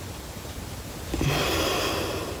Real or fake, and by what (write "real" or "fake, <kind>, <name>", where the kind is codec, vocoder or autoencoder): real